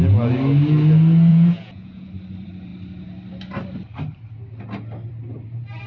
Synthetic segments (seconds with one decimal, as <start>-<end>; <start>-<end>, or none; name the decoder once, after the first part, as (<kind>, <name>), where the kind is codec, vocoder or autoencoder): 1.3-2.1 (vocoder, Vocos)